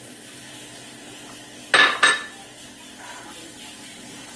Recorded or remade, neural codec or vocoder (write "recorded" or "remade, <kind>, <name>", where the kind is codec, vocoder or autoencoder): recorded